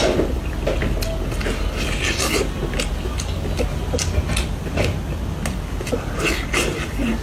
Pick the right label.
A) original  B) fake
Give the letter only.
A